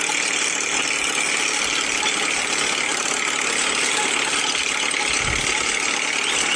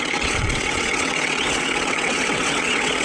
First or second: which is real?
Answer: first